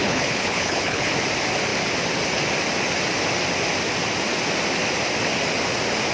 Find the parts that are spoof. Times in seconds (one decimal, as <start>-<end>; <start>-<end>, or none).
0.0-1.1